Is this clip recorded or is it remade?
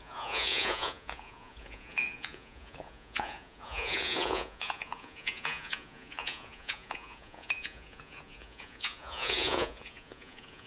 remade